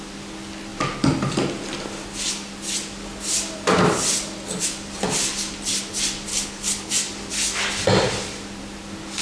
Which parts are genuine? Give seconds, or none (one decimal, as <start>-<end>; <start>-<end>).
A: 0.0-6.3; 6.9-9.2